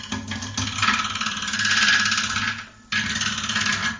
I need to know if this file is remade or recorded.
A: recorded